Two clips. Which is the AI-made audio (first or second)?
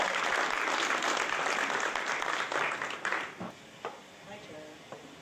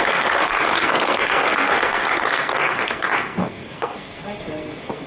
second